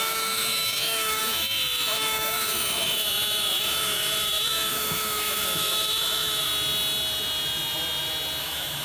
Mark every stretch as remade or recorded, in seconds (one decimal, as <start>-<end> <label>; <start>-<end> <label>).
0.0-6.5 remade; 6.5-8.4 recorded; 8.4-8.8 remade